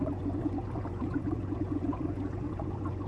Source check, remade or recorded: remade